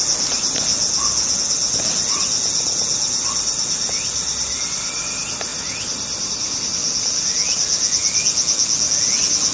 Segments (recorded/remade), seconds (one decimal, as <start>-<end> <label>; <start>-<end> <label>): 0.0-9.5 recorded